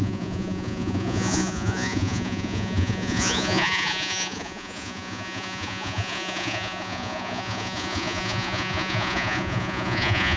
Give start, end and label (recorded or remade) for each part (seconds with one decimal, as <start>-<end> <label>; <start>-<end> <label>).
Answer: 0.0-10.4 remade